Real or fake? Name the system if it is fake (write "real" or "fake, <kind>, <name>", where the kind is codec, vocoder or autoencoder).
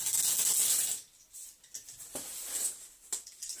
real